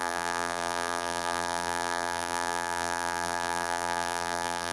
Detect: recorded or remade remade